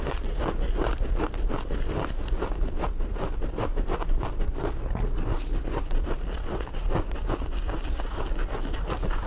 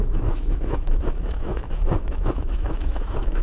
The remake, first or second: second